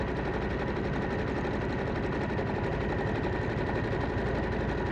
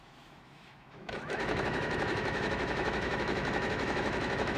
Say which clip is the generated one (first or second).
second